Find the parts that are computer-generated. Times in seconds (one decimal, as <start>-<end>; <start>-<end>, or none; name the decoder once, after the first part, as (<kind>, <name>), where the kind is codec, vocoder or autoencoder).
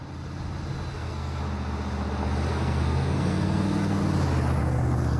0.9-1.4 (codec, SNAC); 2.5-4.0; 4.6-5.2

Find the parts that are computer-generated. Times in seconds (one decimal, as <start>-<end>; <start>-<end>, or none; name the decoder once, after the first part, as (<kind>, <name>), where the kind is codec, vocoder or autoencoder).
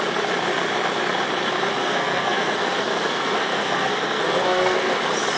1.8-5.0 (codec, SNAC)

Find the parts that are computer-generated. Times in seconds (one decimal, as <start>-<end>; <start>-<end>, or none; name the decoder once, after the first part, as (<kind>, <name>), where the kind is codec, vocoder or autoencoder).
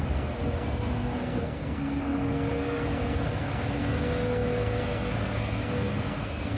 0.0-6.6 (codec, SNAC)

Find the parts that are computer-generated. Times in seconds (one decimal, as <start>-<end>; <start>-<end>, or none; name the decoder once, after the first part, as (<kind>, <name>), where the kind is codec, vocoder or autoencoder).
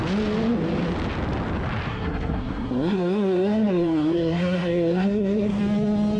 1.9-5.6 (codec, SNAC)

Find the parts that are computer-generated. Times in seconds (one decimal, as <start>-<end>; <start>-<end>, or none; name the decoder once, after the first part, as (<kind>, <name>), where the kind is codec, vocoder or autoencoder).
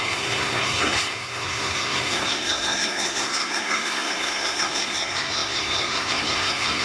0.0-6.8 (codec, SNAC)